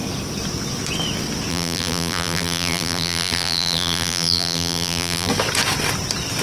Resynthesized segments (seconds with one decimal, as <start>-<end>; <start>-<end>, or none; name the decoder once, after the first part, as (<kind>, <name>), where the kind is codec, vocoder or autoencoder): 1.5-5.3 (vocoder, BigVGAN v2)